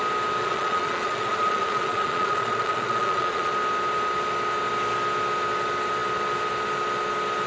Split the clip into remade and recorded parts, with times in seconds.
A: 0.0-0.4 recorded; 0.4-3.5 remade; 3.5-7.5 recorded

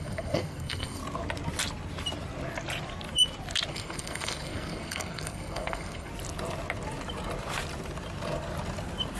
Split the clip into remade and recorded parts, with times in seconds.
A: 0.0-1.0 remade; 1.0-3.7 recorded; 3.7-6.1 remade; 6.1-9.2 recorded

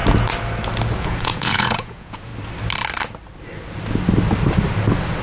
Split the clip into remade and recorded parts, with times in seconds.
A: 0.0-1.0 recorded; 1.0-2.3 remade; 2.3-5.2 recorded

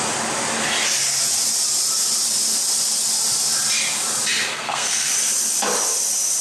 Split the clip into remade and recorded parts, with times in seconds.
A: 0.0-4.5 recorded; 4.5-5.1 remade; 5.1-6.4 recorded

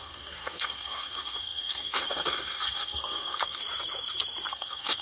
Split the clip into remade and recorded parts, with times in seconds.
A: 0.0-3.6 remade; 3.6-4.5 recorded; 4.5-5.0 remade